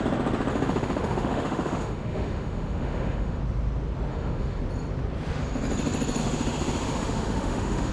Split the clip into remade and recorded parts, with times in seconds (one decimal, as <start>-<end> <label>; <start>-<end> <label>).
0.0-0.5 recorded; 0.5-3.4 remade; 3.4-4.1 recorded; 4.1-4.6 remade; 4.6-6.2 recorded; 6.2-7.9 remade